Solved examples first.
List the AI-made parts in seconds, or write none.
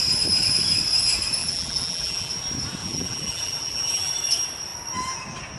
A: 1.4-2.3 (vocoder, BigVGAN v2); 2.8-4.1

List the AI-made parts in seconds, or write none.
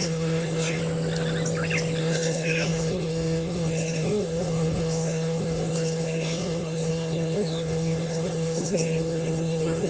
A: 0.0-0.8 (codec, SNAC); 2.0-9.9